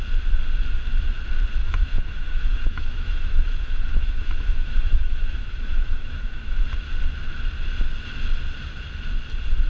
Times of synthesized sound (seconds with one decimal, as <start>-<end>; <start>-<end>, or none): 1.6-6.6